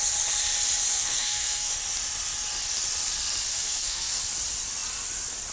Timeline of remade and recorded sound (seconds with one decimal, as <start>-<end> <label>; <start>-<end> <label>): 0.0-0.9 recorded; 0.9-1.7 remade; 1.7-3.5 recorded; 3.5-4.2 remade; 4.2-5.5 recorded